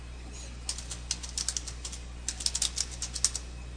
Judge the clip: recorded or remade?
recorded